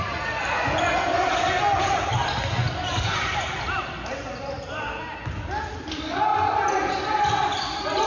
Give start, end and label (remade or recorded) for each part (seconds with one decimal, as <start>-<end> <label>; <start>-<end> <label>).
0.0-8.1 recorded